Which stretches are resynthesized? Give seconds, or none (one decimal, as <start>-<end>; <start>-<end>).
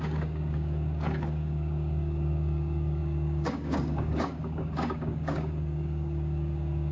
0.0-6.9